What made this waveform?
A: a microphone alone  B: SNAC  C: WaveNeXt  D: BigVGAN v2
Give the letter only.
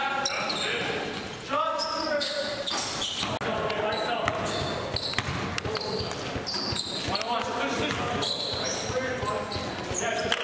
A